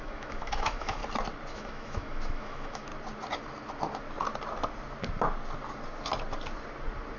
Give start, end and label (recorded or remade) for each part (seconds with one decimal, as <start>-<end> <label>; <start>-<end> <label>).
0.0-1.0 remade; 1.0-1.5 recorded; 1.5-2.9 remade; 2.9-7.2 recorded